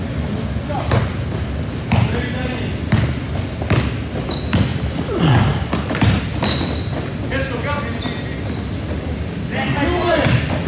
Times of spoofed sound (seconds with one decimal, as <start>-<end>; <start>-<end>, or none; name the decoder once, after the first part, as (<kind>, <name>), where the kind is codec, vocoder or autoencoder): 4.7-6.2 (vocoder, BigVGAN v2)